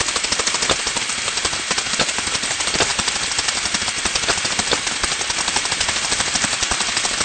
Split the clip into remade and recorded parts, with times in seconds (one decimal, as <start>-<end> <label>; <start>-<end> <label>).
0.0-7.2 recorded